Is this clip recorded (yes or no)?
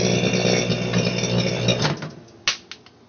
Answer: yes